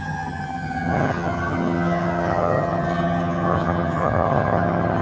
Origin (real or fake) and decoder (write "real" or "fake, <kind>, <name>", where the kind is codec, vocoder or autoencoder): fake, vocoder, HiFi-GAN